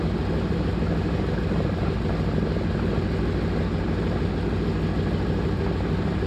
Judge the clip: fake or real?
real